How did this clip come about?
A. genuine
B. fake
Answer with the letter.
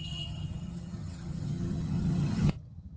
B